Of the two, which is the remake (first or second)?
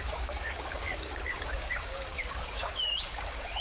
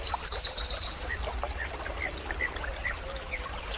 first